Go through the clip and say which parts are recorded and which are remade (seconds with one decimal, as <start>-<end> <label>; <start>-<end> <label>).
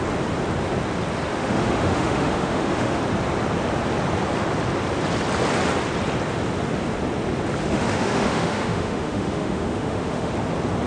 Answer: 0.0-1.3 recorded; 1.3-3.0 remade; 3.0-7.6 recorded; 7.6-10.3 remade; 10.3-10.9 recorded